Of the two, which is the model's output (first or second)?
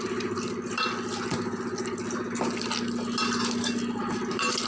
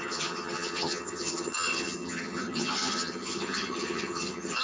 second